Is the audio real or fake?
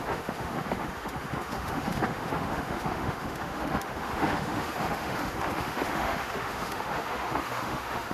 fake